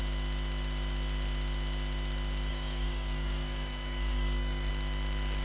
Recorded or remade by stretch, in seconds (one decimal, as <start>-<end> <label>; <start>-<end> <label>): 0.0-2.5 recorded; 2.5-4.7 remade; 4.7-5.4 recorded